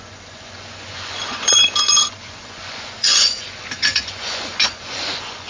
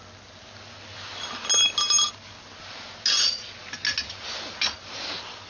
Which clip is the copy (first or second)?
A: first